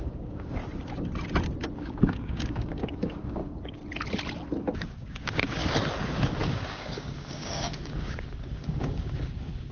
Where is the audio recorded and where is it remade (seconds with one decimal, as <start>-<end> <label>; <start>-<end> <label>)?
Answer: 0.0-0.6 remade; 0.6-1.7 recorded; 1.7-3.8 remade; 3.8-4.8 recorded; 4.8-5.6 remade; 5.6-6.4 recorded; 6.4-9.7 remade